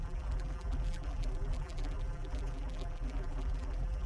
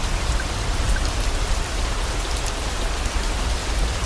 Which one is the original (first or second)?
second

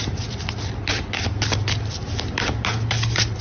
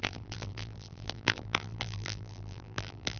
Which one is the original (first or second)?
first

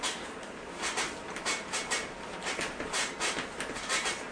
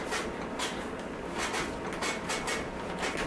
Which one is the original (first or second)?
second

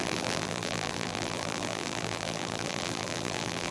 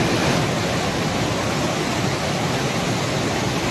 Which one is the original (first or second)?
second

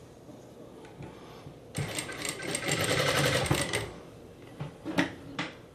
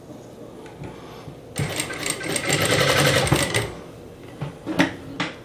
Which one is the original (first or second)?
second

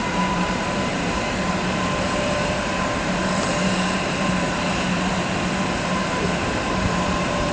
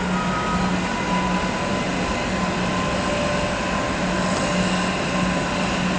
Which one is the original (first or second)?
second